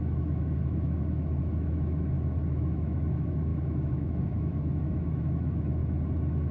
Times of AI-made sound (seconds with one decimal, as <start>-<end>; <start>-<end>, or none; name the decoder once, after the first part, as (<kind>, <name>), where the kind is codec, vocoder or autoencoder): 0.0-5.8 (autoencoder, DAC-VAE)